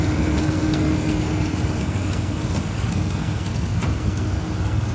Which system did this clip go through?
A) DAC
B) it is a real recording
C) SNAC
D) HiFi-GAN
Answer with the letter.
C